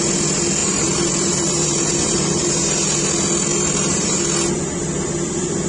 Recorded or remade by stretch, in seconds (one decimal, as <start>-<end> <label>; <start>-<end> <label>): 0.0-0.6 recorded; 0.6-2.5 remade; 2.5-3.5 recorded; 3.5-4.2 remade; 4.2-5.7 recorded

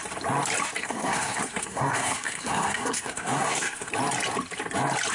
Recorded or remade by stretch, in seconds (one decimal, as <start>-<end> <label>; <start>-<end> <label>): 0.0-0.8 recorded; 0.8-3.9 remade; 3.9-5.1 recorded